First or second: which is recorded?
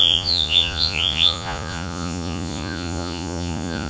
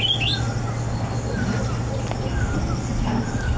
second